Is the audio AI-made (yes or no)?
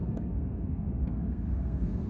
yes